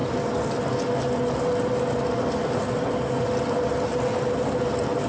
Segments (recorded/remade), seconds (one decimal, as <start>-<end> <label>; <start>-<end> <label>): 0.0-5.1 recorded

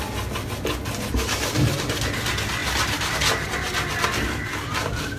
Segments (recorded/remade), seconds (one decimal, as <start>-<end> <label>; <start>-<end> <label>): 0.0-2.6 recorded; 2.6-3.1 remade; 3.1-5.2 recorded